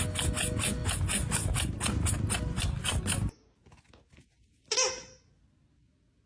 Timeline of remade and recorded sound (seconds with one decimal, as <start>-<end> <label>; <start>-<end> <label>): 0.0-6.3 recorded